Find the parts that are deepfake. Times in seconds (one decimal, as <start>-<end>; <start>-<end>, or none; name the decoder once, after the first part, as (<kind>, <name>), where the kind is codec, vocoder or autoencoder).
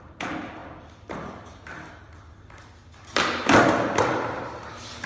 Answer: none